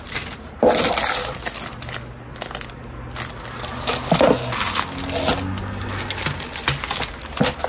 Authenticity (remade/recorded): recorded